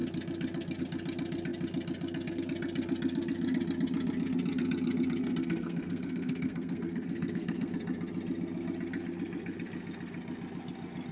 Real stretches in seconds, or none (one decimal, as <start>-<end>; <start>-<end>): 0.0-5.2; 7.7-11.1